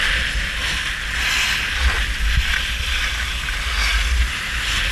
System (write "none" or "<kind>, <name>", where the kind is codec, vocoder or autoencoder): none